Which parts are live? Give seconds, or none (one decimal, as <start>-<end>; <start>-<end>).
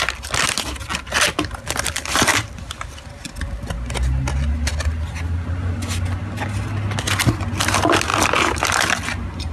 0.0-9.5